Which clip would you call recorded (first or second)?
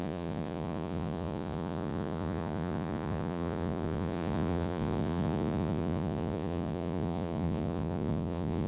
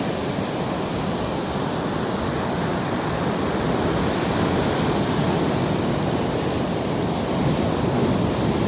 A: second